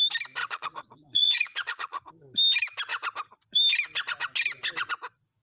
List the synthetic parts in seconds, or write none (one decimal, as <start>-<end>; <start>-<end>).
0.4-2.1